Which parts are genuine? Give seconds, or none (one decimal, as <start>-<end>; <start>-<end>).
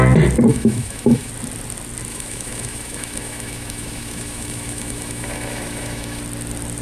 0.0-0.5; 1.3-2.1; 6.2-6.8